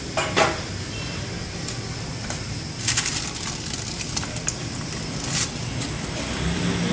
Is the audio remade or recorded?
recorded